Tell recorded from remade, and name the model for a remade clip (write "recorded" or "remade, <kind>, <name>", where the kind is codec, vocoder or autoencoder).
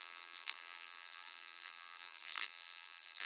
remade, vocoder, BigVGAN v2